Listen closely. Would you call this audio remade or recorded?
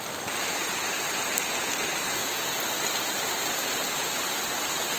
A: recorded